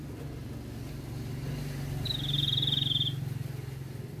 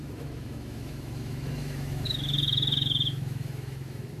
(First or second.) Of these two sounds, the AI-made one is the second